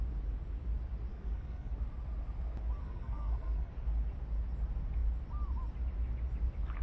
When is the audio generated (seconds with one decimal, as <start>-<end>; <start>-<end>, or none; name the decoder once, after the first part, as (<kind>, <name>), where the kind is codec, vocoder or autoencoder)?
1.1-1.7 (codec, SNAC); 2.8-3.7